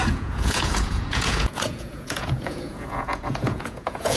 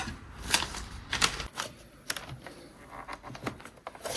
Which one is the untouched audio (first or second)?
second